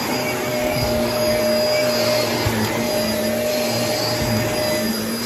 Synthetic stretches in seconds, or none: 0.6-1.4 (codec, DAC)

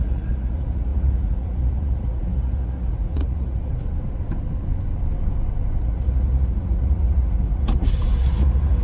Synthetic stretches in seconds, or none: 0.0-3.7 (vocoder, Vocos); 5.8-8.8

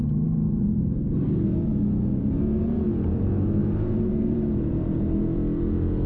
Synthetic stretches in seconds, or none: 0.0-1.7 (vocoder, BigVGAN v2); 2.2-5.4